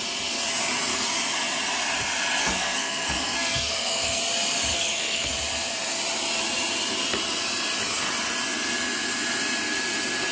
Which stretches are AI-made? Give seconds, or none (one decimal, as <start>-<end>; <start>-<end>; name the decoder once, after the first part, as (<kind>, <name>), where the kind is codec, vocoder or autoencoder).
2.4-4.2 (codec, SNAC); 4.7-5.3